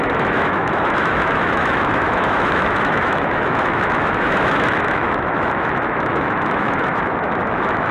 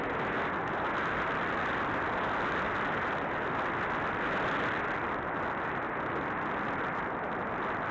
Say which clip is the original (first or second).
second